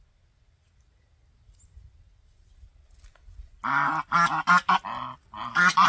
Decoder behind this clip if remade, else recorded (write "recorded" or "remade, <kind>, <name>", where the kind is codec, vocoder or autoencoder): recorded